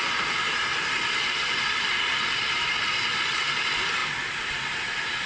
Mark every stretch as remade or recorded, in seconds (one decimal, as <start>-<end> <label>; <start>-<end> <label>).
0.0-5.3 recorded